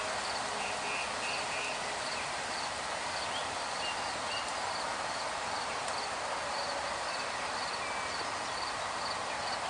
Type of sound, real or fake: real